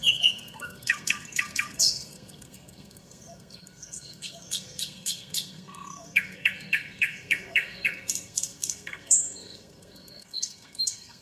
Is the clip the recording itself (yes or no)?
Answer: no